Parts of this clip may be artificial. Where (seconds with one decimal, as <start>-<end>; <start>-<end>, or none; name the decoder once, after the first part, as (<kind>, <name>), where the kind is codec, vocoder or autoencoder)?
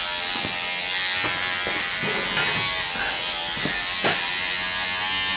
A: none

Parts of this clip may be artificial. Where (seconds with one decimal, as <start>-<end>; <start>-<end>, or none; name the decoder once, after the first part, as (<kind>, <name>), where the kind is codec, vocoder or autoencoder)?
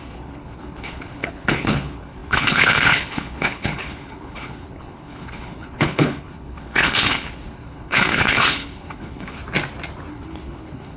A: 0.0-9.4 (codec, HILCodec); 10.1-11.0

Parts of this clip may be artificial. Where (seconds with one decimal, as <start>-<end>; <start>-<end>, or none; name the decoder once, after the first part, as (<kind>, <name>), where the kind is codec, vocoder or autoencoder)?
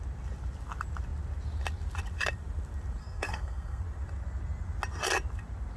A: 3.0-3.8 (codec, SNAC)